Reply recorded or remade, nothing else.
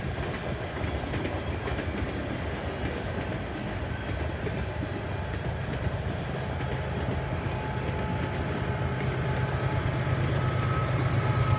recorded